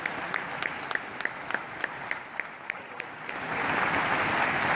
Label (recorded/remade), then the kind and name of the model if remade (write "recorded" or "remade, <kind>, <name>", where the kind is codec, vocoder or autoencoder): recorded